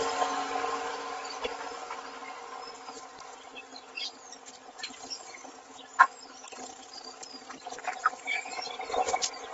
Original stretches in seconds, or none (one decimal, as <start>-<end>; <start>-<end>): 2.2-2.8; 3.7-8.1